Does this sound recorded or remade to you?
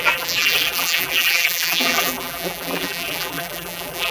remade